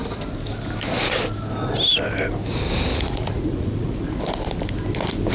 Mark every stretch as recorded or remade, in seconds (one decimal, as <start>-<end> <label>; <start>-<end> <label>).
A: 0.0-2.9 recorded; 2.9-4.2 remade; 4.2-5.3 recorded